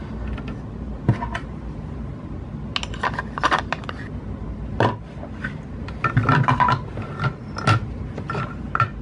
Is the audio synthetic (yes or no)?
no